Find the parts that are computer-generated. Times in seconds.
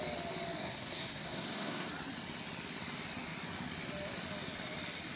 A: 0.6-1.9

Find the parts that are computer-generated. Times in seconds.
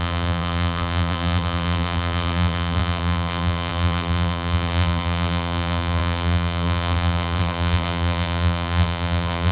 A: 0.0-9.5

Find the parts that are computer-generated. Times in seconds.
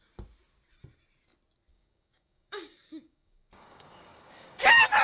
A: 1.7-5.0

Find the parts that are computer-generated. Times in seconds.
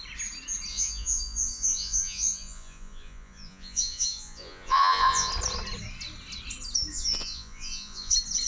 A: 0.7-5.3; 6.9-8.1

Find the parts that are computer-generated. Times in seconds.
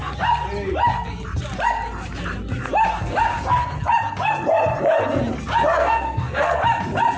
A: 5.8-6.6